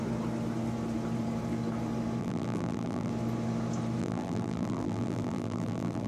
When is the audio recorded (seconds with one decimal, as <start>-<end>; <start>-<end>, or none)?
0.0-2.2; 3.1-4.0